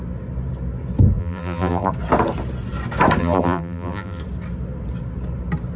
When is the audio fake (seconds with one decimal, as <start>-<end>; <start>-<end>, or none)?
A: 1.2-1.9; 3.2-4.2